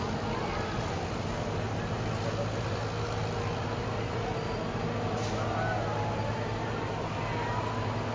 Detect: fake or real real